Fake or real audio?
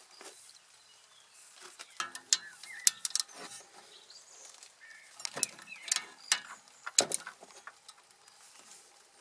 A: real